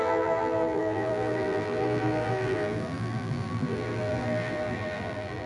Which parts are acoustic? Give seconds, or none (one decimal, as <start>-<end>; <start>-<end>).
none